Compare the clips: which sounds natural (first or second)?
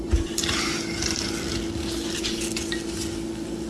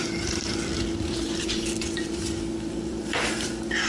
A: first